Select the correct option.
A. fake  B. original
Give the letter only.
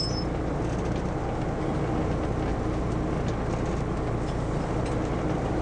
B